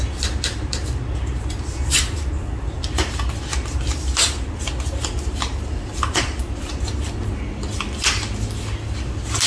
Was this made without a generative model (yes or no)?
yes